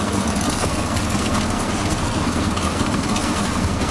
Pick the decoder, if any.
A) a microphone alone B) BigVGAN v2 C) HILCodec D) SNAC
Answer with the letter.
D